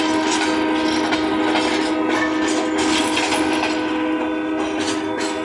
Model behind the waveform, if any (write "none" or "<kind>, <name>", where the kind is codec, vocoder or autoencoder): none